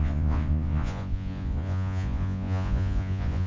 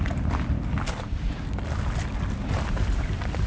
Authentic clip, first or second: second